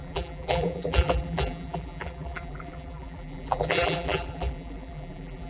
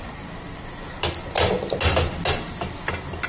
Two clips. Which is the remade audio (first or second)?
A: first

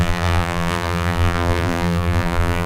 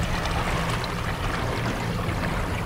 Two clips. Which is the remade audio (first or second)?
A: first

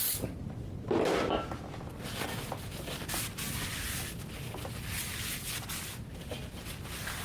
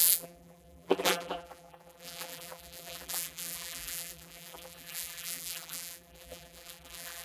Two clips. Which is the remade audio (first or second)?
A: second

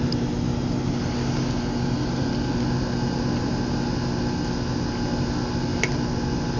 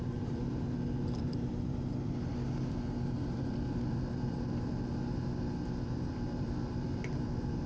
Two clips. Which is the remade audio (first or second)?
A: second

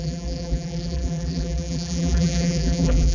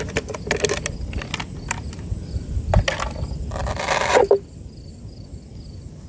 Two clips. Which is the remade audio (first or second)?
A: first